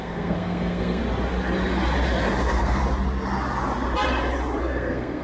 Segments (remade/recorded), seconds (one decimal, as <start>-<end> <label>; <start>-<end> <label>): 0.0-1.0 remade; 1.0-2.4 recorded; 2.4-2.8 remade; 2.8-4.6 recorded; 4.6-5.2 remade